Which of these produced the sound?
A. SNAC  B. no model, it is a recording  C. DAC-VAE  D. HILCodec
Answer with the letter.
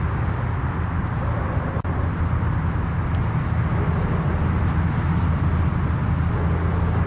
B